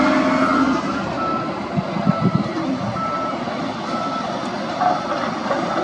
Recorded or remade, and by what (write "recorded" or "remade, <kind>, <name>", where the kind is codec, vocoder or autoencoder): recorded